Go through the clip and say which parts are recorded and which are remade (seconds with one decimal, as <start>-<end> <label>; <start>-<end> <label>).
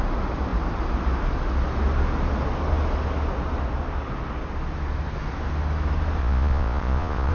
0.0-6.2 recorded; 6.2-7.3 remade